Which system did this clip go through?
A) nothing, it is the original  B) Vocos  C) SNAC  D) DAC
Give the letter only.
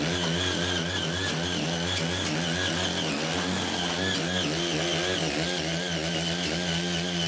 A